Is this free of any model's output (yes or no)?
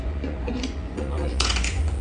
no